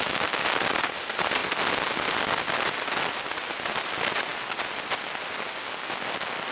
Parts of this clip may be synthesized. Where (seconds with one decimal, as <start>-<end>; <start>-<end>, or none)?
none